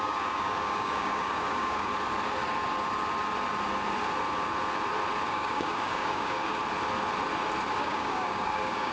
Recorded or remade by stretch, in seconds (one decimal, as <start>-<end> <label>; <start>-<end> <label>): 0.0-1.9 remade; 1.9-5.3 recorded; 5.3-6.6 remade; 6.6-7.7 recorded; 7.7-8.9 remade